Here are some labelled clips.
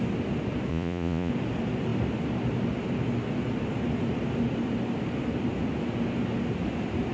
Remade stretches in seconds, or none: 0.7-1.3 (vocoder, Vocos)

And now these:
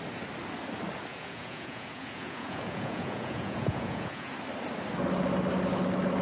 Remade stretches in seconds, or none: 1.1-4.3 (vocoder, Vocos)

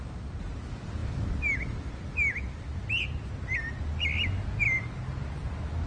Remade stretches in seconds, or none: none